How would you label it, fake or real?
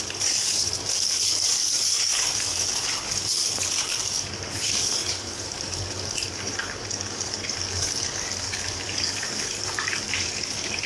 fake